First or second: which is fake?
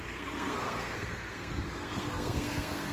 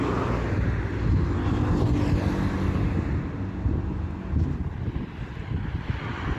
first